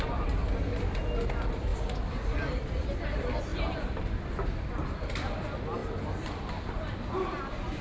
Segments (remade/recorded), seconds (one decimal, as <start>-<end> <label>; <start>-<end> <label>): 0.0-7.8 recorded